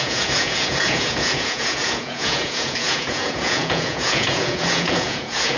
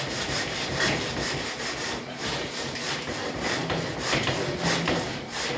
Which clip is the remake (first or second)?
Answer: first